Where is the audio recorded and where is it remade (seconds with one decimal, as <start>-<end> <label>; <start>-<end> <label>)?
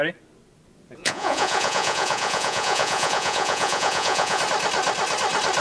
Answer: 0.0-1.0 recorded; 1.0-4.4 remade; 4.4-5.6 recorded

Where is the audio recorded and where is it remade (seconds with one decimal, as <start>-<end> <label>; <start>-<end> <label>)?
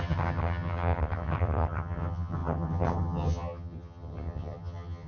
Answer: 0.0-5.1 remade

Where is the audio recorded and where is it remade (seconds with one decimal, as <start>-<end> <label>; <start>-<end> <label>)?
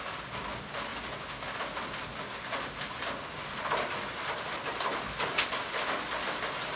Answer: 0.0-6.8 recorded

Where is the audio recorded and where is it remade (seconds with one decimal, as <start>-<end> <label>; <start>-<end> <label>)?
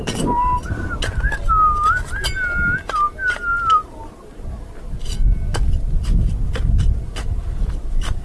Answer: 0.0-8.2 recorded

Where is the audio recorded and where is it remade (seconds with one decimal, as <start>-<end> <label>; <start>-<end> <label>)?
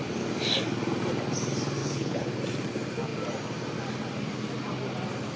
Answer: 0.0-1.8 recorded; 1.8-2.3 remade; 2.3-5.4 recorded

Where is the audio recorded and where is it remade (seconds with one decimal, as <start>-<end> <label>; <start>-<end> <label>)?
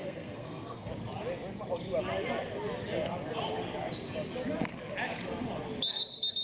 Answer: 0.0-0.9 remade; 0.9-6.4 recorded